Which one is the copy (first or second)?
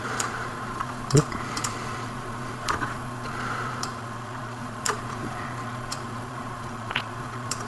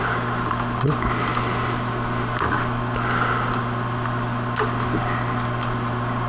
first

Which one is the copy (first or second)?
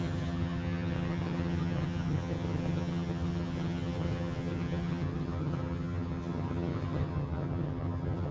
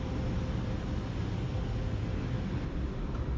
first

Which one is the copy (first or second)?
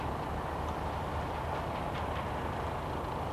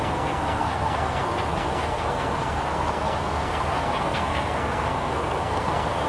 second